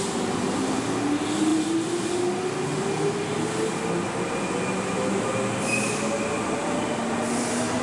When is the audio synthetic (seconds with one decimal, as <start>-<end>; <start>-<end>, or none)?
none